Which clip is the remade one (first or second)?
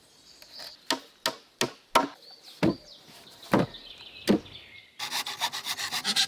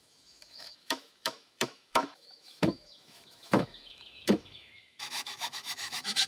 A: second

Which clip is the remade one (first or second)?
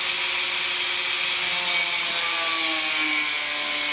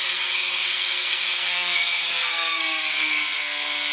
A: second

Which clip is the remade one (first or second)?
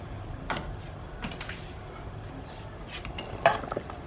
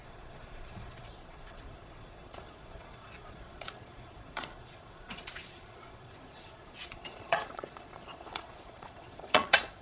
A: second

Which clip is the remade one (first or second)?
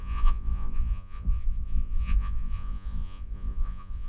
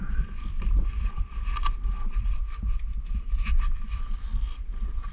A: first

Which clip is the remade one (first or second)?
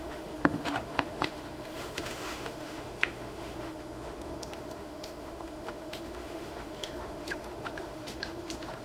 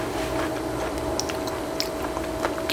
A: first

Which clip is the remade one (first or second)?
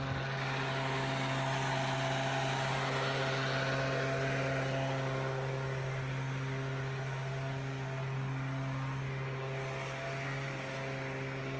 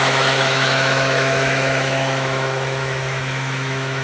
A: second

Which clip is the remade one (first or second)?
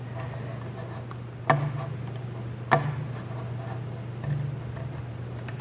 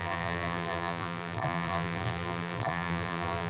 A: second